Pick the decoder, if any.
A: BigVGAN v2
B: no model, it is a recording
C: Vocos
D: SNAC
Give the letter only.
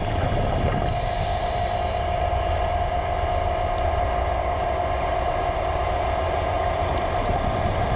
B